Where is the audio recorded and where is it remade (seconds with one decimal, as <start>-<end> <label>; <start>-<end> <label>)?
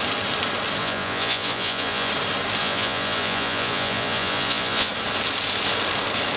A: 0.0-0.8 recorded; 0.8-2.1 remade; 2.1-2.6 recorded; 2.6-4.9 remade; 4.9-6.4 recorded